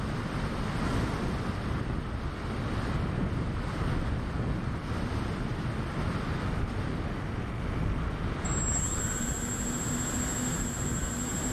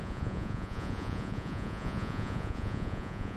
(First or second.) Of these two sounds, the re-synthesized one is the second